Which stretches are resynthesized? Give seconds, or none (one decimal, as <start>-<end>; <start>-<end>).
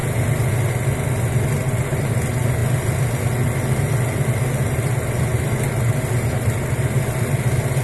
none